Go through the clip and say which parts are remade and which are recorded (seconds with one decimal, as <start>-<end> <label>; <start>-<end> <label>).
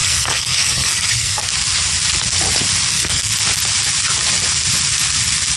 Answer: 0.0-1.5 remade; 1.5-2.9 recorded; 2.9-3.3 remade; 3.3-5.6 recorded